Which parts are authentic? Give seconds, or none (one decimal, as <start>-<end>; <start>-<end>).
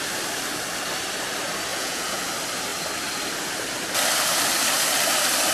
0.0-1.7; 2.3-5.5